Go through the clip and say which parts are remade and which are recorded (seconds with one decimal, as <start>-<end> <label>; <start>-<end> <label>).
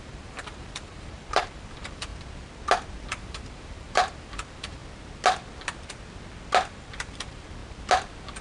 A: 0.0-2.1 remade; 2.1-3.1 recorded; 3.1-4.8 remade; 4.8-6.7 recorded; 6.7-7.6 remade; 7.6-8.4 recorded